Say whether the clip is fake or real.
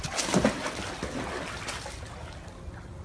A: real